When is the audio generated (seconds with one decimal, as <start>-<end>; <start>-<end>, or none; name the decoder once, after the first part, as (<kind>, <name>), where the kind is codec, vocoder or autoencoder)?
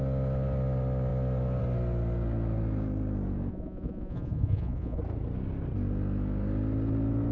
3.5-5.0 (vocoder, Vocos)